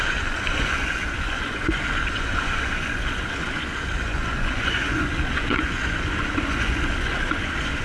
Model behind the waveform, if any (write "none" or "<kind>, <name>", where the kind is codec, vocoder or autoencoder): vocoder, Vocos